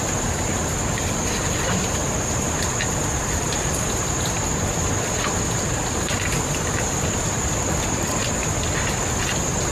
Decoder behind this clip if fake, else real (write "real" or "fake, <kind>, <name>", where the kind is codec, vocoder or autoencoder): real